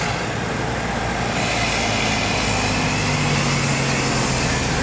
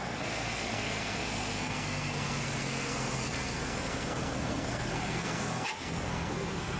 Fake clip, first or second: second